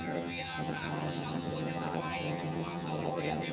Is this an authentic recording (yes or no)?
no